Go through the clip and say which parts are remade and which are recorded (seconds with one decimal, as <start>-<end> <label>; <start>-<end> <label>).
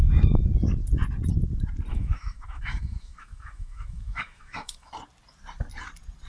0.0-1.9 recorded; 1.9-4.9 remade; 4.9-6.3 recorded